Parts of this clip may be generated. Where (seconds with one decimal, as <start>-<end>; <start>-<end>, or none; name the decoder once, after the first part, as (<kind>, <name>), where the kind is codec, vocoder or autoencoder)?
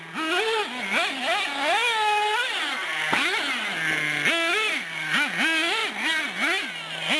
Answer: none